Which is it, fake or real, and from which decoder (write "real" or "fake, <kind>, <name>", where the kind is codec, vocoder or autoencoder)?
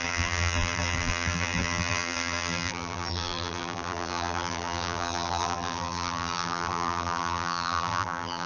fake, vocoder, BigVGAN v2